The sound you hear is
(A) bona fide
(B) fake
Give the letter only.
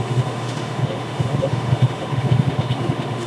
B